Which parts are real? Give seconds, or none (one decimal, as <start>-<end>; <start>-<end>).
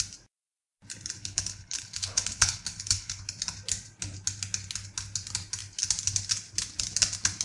0.0-1.2; 3.2-7.4